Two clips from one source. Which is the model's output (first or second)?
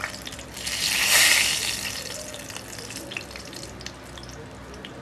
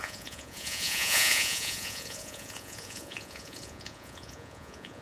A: second